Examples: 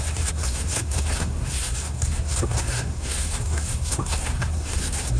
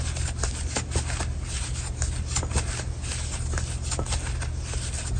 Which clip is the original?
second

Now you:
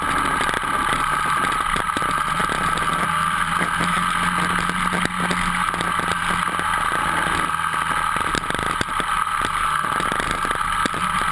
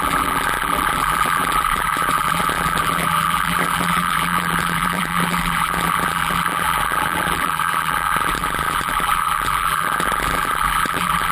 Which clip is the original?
first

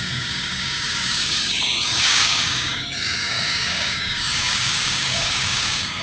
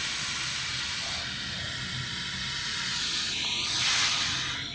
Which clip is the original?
second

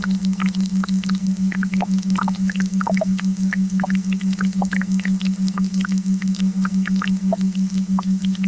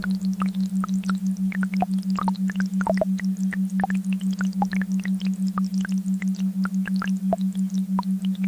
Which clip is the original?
second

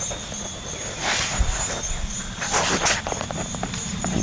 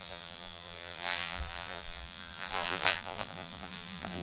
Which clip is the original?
first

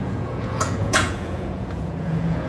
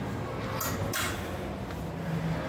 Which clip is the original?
second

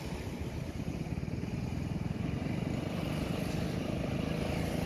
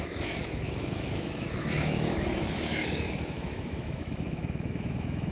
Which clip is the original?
first